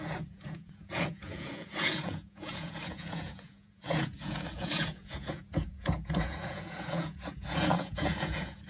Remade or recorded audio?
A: remade